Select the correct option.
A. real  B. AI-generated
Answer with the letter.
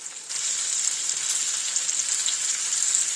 A